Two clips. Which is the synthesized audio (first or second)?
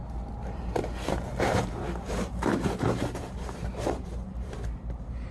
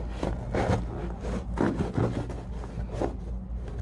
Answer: first